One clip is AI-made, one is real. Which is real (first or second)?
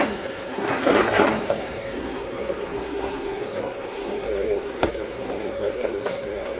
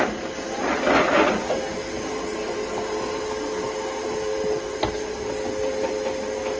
second